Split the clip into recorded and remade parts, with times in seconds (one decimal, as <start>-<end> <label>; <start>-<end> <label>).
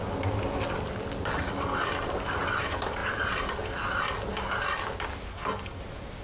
0.0-5.3 recorded; 5.3-5.8 remade; 5.8-6.2 recorded